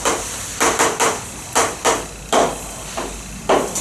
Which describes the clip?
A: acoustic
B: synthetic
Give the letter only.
A